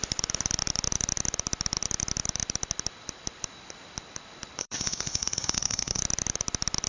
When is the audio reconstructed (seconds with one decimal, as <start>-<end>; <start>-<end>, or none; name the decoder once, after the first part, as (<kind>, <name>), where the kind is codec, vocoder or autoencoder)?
4.6-6.0 (codec, SNAC)

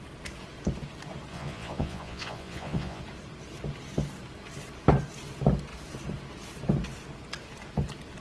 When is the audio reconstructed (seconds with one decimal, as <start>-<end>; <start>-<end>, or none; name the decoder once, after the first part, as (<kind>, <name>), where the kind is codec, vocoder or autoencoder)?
1.3-3.0 (vocoder, Vocos)

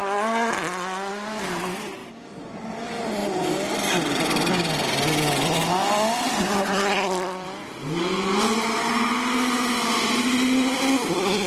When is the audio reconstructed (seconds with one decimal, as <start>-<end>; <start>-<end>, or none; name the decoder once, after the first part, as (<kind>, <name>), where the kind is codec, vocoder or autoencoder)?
2.0-2.8 (vocoder, BigVGAN v2); 3.2-4.5

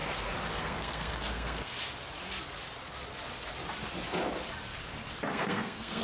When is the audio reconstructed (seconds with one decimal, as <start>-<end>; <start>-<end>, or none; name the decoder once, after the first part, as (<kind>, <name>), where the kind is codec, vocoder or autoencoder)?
0.6-1.7 (codec, SNAC); 5.3-6.0

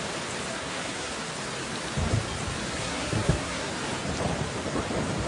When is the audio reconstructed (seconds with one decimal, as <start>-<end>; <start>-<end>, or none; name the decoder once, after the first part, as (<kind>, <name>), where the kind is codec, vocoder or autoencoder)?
0.5-1.1 (codec, SNAC); 2.7-3.7